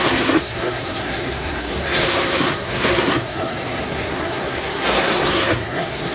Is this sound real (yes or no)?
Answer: no